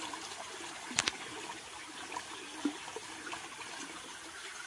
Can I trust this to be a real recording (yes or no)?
yes